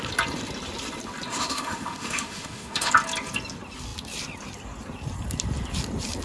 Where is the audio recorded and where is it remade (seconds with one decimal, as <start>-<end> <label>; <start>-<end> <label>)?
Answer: 0.0-1.3 recorded; 1.3-2.9 remade; 2.9-6.2 recorded